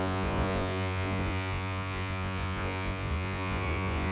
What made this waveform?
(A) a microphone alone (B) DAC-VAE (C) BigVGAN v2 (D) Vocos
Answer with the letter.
D